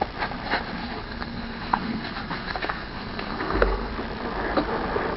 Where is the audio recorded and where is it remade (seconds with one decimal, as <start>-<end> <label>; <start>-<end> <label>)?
0.0-0.8 recorded; 0.8-3.9 remade; 3.9-5.2 recorded